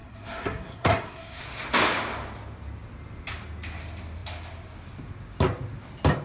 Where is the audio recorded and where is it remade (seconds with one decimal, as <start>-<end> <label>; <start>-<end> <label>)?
0.0-1.4 remade; 1.4-6.2 recorded